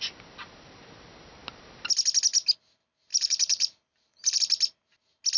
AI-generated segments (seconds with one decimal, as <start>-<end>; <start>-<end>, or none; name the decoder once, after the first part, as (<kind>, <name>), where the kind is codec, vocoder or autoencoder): 3.1-4.4 (vocoder, BigVGAN v2)